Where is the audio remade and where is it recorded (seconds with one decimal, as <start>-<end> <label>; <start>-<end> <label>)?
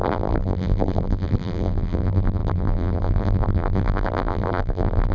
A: 0.0-5.1 remade